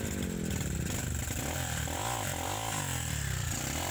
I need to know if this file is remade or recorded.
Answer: remade